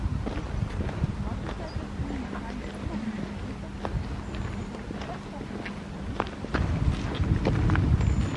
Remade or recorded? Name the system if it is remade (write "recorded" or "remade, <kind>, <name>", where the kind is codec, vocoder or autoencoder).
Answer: recorded